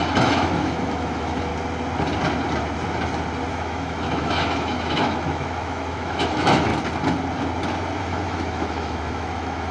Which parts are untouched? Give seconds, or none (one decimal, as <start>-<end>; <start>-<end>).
1.5-3.5; 6.7-8.0